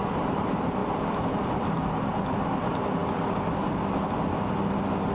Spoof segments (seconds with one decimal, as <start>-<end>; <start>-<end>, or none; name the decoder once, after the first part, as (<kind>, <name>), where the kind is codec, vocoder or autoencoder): none